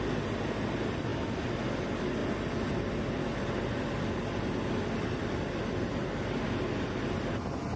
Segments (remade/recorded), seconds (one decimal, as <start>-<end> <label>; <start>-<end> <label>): 0.0-7.8 recorded